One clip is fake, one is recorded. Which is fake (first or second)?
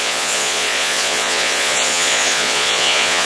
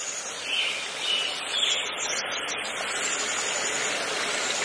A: first